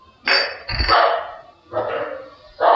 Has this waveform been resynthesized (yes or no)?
no